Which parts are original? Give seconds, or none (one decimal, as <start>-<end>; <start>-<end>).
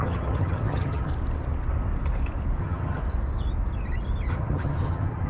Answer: 1.1-2.6; 3.0-4.3